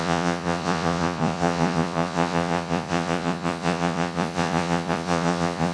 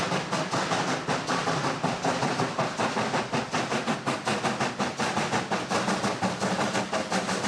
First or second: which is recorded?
second